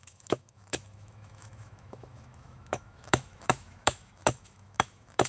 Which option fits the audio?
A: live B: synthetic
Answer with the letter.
B